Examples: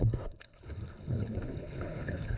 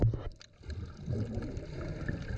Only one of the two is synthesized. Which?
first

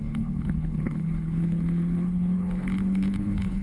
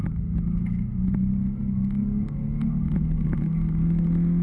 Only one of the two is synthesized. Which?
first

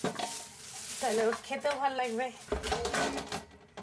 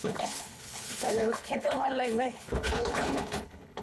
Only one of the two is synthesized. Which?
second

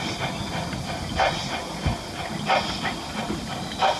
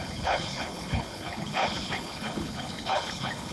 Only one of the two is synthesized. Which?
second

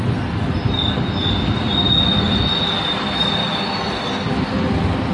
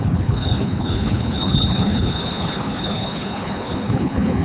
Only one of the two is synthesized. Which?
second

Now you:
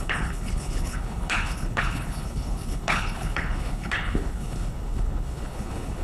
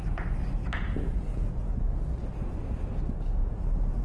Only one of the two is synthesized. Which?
first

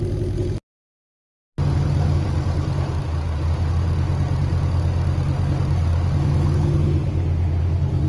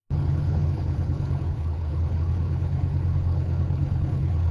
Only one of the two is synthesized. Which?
second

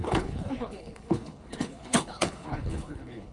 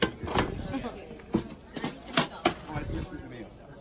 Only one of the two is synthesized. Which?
first